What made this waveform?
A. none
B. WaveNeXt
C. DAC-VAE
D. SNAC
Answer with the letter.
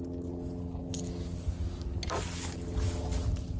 A